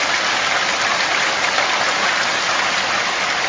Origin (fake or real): real